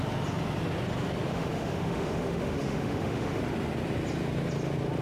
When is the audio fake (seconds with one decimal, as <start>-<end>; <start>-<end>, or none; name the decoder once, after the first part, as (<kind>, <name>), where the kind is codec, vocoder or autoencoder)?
1.3-3.4 (autoencoder, DAC-VAE)